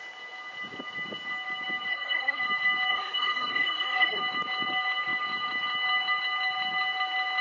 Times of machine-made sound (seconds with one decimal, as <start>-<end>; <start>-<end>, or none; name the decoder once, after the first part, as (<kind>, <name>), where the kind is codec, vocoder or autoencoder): 1.9-2.4 (codec, SNAC); 2.9-4.2